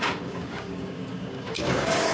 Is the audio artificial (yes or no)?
yes